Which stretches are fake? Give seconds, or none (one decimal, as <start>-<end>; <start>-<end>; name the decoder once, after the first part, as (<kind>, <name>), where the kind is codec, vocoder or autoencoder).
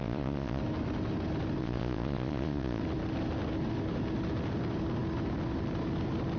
0.0-0.6 (vocoder, Vocos); 1.6-2.8